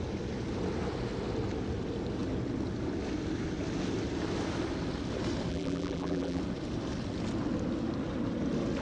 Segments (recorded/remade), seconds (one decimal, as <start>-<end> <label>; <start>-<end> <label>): 0.0-5.5 recorded; 5.5-6.4 remade; 6.4-8.8 recorded